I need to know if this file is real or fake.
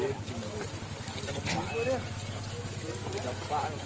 real